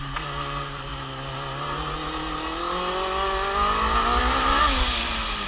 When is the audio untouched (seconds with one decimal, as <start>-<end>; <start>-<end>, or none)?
0.0-5.5